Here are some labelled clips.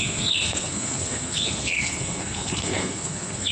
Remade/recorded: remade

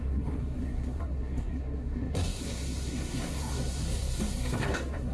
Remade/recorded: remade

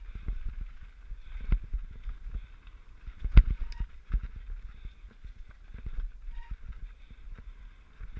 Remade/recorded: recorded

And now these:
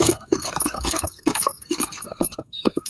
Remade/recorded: remade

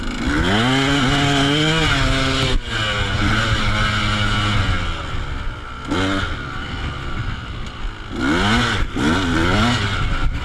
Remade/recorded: recorded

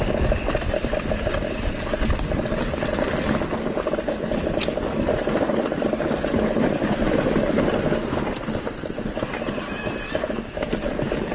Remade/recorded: recorded